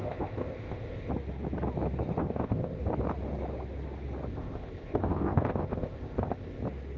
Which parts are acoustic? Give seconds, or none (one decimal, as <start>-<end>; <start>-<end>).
1.1-2.2; 2.8-4.3; 6.6-7.0